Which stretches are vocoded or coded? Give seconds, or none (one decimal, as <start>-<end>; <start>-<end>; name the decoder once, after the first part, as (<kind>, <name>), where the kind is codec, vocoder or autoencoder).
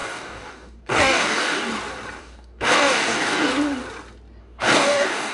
0.0-1.7 (codec, DAC); 2.2-3.5; 4.4-5.3